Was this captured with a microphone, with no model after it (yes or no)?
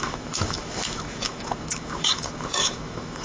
no